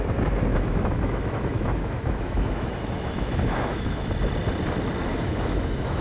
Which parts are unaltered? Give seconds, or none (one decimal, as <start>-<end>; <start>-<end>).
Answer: 0.0-0.5; 4.1-5.1